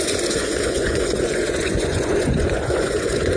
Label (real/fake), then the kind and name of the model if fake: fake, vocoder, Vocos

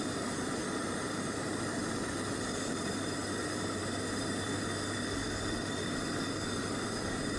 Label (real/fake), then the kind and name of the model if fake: fake, vocoder, BigVGAN v2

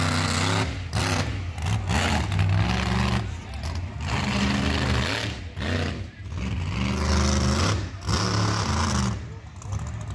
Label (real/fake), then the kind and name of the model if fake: real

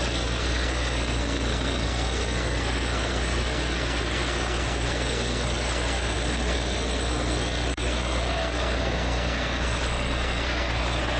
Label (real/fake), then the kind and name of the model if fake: fake, codec, SNAC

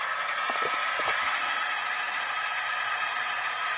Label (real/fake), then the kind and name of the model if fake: real